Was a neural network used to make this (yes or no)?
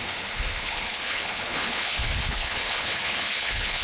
yes